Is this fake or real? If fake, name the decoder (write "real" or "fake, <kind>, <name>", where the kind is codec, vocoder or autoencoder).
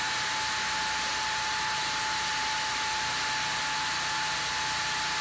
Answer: real